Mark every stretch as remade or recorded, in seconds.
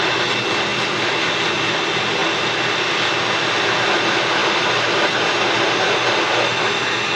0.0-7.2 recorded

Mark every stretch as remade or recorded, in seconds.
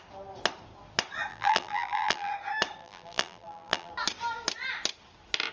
0.0-1.3 recorded; 1.3-2.3 remade; 2.3-2.8 recorded; 2.8-3.9 remade; 3.9-5.5 recorded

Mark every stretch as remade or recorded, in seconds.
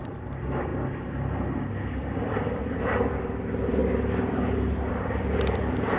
0.0-0.7 remade; 0.7-1.9 recorded; 1.9-3.8 remade; 3.8-4.9 recorded; 4.9-6.0 remade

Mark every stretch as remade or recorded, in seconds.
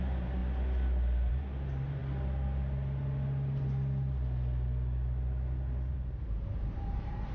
0.0-0.4 remade; 0.4-1.3 recorded; 1.3-2.0 remade; 2.0-5.9 recorded; 5.9-7.3 remade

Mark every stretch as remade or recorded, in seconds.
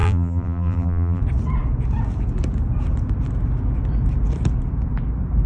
0.0-1.2 remade; 1.2-5.5 recorded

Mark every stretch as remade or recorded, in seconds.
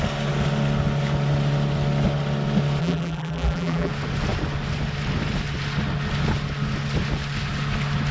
0.0-2.8 recorded; 2.8-3.9 remade; 3.9-8.1 recorded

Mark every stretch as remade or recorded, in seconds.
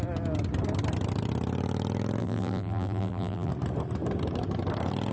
0.0-2.2 recorded; 2.2-3.5 remade; 3.5-5.1 recorded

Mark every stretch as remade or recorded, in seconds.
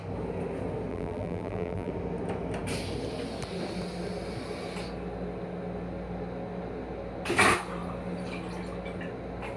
0.0-0.9 recorded; 0.9-1.9 remade; 1.9-9.6 recorded